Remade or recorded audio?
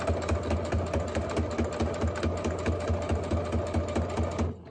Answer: recorded